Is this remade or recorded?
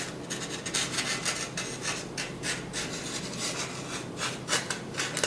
recorded